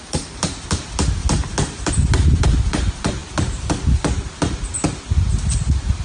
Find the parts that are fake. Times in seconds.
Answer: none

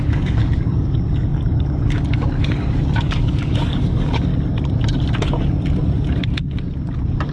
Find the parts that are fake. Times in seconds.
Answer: 0.0-4.3 (codec, DAC)